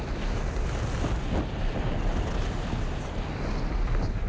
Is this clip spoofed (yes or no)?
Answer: no